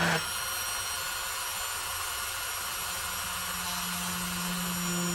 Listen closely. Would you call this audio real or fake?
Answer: real